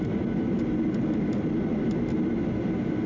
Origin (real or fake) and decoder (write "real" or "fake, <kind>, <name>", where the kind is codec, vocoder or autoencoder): real